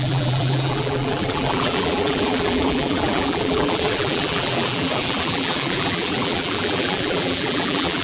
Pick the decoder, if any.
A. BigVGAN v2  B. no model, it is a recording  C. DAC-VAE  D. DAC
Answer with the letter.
A